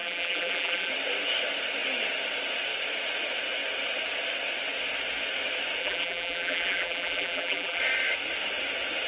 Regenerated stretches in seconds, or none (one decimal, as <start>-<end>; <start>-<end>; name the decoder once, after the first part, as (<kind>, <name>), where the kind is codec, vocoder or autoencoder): 0.0-0.9 (vocoder, BigVGAN v2); 5.8-7.8

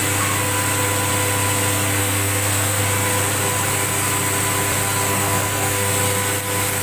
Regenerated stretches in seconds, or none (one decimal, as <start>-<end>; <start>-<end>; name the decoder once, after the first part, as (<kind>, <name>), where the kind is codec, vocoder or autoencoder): 2.0-2.8 (codec, SNAC); 5.1-5.9

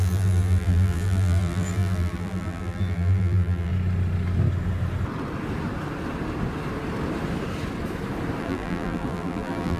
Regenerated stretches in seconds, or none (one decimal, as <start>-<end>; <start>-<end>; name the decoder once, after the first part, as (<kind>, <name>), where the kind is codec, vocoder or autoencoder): 0.0-3.7 (vocoder, BigVGAN v2); 8.4-9.8

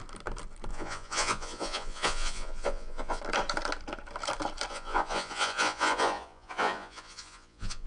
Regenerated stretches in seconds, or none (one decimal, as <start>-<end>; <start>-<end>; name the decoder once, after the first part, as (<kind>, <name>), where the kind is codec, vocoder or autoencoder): 0.7-3.2 (vocoder, Vocos); 4.7-7.9

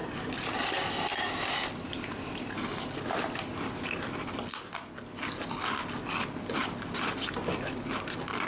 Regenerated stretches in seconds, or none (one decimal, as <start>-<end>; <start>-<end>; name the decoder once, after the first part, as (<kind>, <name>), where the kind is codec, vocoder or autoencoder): 0.0-0.5 (vocoder, BigVGAN v2); 1.1-2.4

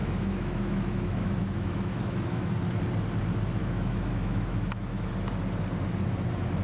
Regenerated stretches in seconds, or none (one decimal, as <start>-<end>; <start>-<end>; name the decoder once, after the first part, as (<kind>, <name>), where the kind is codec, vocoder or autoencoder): 0.0-2.5 (autoencoder, DAC-VAE); 3.6-5.1

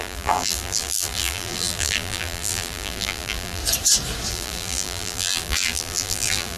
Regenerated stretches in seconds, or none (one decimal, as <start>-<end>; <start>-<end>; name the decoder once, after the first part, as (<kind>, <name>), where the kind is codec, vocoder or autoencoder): 0.0-3.6 (vocoder, BigVGAN v2); 4.3-6.6

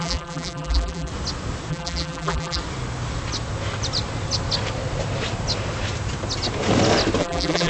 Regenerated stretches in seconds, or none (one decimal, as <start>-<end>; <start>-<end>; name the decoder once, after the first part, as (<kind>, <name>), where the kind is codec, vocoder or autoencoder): 0.0-1.1 (vocoder, BigVGAN v2); 1.7-2.6; 7.2-7.7